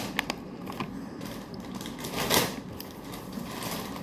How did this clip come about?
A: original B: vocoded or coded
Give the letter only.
A